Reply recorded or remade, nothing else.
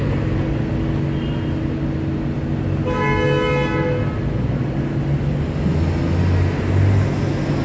recorded